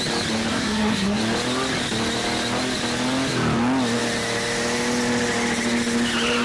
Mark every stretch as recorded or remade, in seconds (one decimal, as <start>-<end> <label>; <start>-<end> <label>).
0.0-0.5 recorded; 0.5-1.2 remade; 1.2-6.4 recorded